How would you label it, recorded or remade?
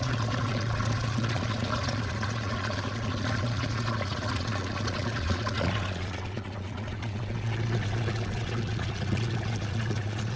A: remade